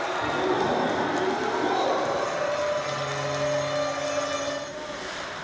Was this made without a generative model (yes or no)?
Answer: yes